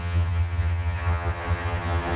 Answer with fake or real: fake